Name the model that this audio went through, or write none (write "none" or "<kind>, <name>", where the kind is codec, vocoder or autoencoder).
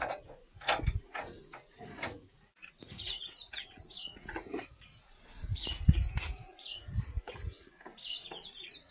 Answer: vocoder, Vocos